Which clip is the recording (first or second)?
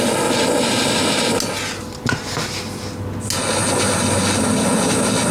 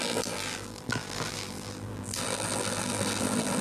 first